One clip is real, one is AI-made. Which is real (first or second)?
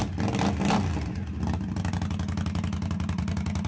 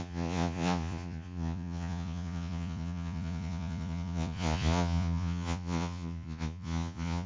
first